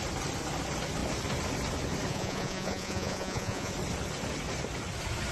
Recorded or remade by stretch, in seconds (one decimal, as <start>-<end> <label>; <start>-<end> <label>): 0.0-2.1 recorded; 2.1-3.7 remade; 3.7-5.3 recorded